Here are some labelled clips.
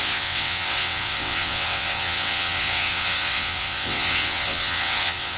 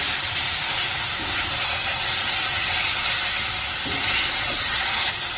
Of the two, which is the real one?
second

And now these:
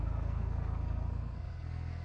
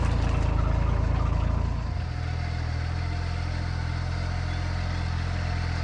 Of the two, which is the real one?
second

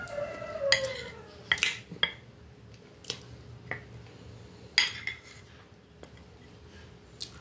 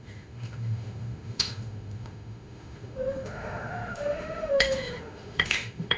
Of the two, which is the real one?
first